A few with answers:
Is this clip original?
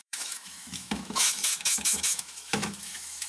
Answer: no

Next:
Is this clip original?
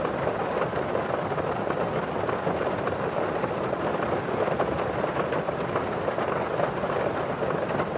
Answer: yes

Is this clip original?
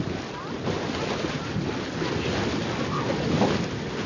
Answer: yes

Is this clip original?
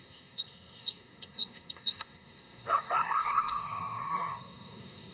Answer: no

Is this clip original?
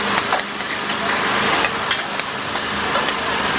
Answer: yes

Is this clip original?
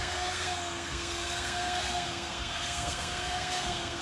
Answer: no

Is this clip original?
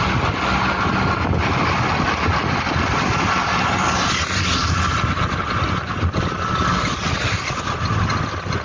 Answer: yes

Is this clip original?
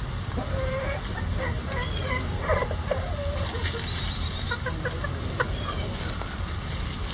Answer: yes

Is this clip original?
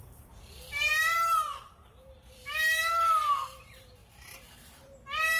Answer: no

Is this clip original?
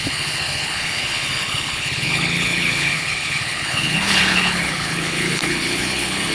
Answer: no